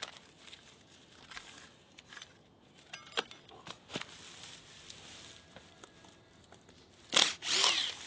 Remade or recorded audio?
recorded